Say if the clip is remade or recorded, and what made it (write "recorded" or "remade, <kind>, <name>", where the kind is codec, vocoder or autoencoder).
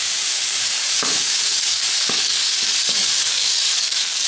remade, codec, DAC